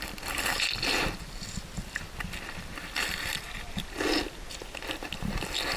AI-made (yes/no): no